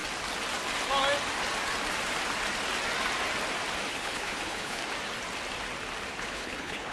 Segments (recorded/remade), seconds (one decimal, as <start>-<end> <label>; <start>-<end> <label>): 0.0-3.9 recorded; 3.9-4.8 remade; 4.8-6.2 recorded; 6.2-6.9 remade

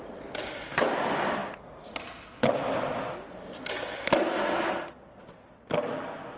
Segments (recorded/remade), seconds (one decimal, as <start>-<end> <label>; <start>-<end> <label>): 0.0-6.4 recorded

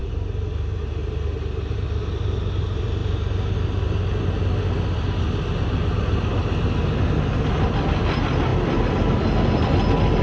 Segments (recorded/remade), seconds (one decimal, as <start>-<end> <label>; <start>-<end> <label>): 0.0-10.2 recorded